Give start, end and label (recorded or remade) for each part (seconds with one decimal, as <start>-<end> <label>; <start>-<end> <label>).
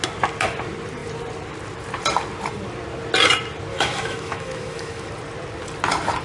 0.0-3.7 recorded; 3.7-5.1 remade; 5.1-6.2 recorded